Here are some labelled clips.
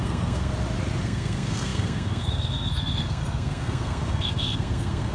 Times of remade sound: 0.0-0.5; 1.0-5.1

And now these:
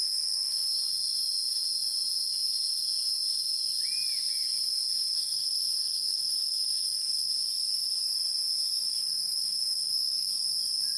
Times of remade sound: 0.0-0.8; 5.1-7.3; 9.0-10.3

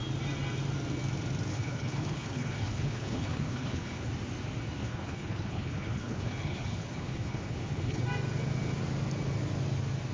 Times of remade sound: 1.5-4.1; 4.8-8.0

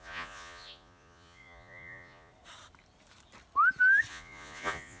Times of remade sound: 0.0-2.3; 4.1-5.0